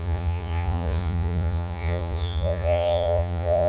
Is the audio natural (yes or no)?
no